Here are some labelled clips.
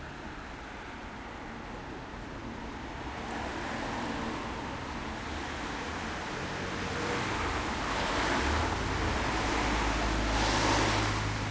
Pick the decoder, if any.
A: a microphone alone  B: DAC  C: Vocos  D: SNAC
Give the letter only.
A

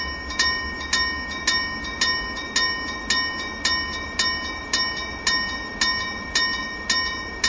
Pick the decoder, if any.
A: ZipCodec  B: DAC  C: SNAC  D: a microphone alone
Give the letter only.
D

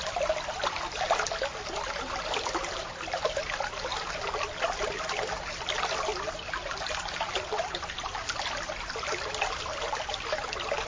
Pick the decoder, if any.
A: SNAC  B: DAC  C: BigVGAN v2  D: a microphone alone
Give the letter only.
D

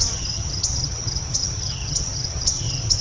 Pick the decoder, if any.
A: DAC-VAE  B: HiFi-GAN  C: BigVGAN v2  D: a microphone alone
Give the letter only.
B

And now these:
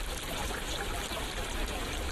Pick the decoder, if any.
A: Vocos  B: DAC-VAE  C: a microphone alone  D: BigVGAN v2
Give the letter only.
C